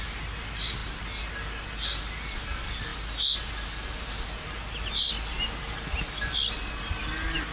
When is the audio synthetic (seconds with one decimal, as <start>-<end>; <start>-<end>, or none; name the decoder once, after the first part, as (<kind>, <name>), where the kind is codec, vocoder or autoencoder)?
none